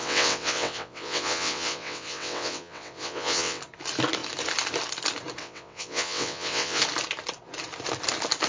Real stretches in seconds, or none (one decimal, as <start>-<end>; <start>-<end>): 3.6-5.4; 6.8-8.5

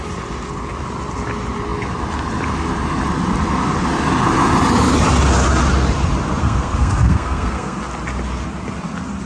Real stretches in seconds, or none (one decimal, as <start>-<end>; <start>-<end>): 0.0-6.4; 7.8-9.3

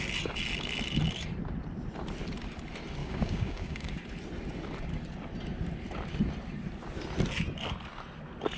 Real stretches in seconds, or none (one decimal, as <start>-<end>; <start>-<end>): 0.0-3.0; 3.9-8.6

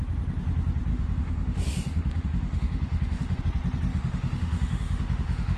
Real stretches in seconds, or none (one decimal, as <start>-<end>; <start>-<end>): 0.0-0.9; 3.4-3.9

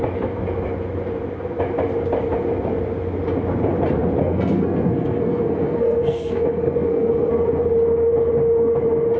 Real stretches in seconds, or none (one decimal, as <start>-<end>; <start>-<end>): 0.0-4.2; 7.3-9.2

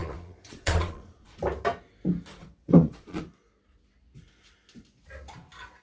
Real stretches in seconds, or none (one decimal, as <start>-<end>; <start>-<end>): 1.4-2.3; 3.2-5.8

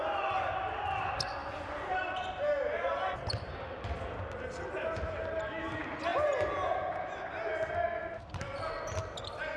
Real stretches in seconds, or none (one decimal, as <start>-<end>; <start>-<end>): 0.0-1.4; 4.0-9.6

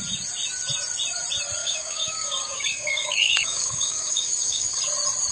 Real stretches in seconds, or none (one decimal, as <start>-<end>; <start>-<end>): 0.0-1.6; 4.8-5.3